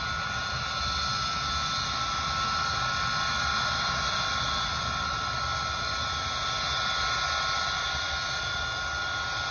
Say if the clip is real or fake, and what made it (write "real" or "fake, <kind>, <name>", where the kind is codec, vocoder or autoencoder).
real